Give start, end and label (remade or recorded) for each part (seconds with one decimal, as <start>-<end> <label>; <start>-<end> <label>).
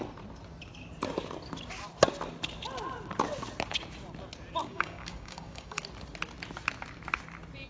0.0-4.6 recorded; 4.6-5.8 remade; 5.8-7.7 recorded